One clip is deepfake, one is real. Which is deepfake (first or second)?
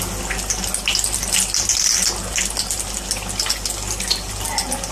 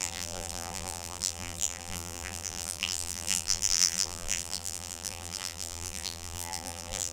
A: second